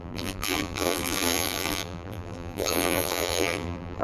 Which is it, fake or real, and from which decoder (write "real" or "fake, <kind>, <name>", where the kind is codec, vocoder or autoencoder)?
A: fake, vocoder, BigVGAN v2